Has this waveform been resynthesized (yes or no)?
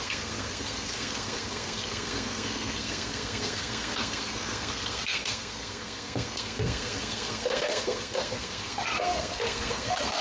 yes